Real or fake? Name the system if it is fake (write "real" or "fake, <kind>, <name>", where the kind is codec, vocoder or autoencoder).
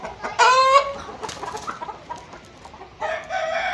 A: real